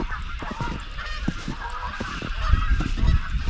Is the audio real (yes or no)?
no